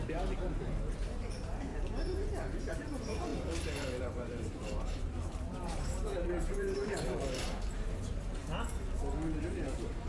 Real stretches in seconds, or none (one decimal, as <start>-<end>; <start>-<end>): 1.7-2.7; 3.3-4.0; 8.4-9.3